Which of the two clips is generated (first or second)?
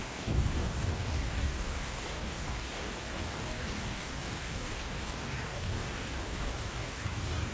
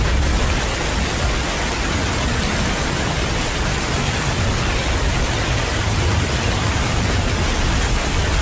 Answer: first